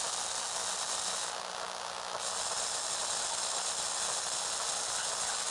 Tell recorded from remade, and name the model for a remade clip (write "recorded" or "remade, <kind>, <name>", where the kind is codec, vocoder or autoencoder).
recorded